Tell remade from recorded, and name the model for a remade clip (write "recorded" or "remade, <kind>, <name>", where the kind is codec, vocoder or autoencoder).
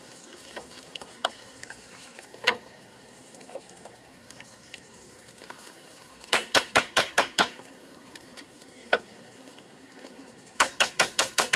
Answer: remade, codec, SNAC